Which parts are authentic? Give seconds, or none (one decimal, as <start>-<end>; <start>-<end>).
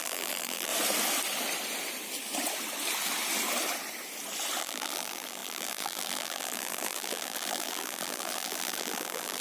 0.7-4.6